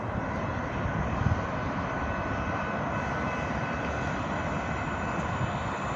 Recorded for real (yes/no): no